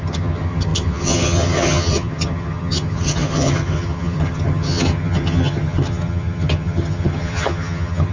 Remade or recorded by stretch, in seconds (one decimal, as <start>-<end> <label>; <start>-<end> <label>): 0.0-8.1 remade